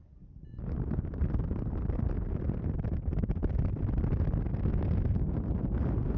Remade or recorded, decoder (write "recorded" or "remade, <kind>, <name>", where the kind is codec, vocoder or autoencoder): recorded